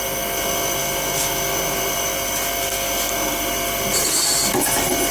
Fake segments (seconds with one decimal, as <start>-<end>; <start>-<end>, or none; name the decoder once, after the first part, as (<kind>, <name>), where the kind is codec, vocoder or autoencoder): none